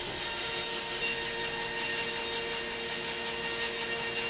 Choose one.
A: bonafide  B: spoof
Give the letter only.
A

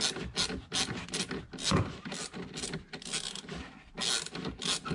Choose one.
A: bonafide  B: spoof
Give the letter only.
A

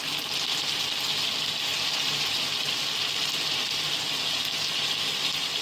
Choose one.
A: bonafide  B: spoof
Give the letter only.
A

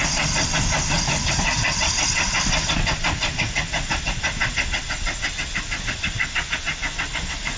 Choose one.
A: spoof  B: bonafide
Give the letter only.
B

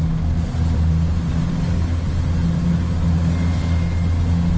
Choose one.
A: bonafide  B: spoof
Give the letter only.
A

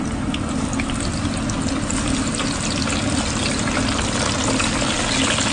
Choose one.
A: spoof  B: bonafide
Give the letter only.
B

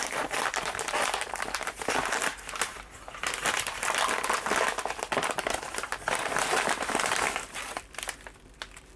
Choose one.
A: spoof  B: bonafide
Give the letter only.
A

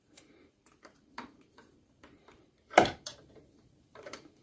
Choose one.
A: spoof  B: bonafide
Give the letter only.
A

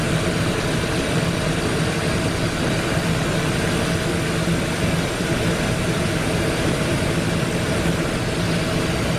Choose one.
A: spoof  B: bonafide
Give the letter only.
B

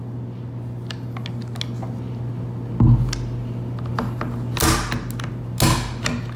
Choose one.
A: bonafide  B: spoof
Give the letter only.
A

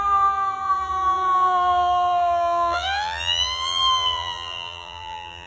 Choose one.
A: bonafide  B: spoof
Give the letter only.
B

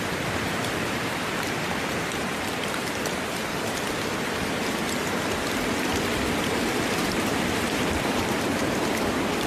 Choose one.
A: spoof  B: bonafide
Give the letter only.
A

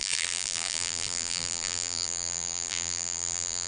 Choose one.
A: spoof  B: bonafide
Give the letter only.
A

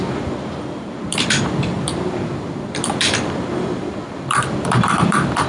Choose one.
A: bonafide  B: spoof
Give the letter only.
B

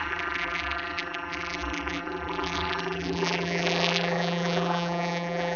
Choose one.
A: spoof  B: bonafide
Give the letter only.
A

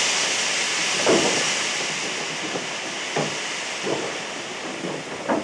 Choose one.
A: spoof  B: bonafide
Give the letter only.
B